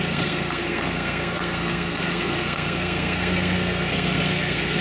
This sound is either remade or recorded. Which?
remade